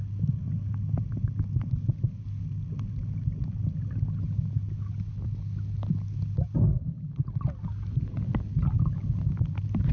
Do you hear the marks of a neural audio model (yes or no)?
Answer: no